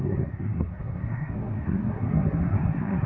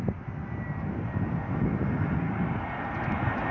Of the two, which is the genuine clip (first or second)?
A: second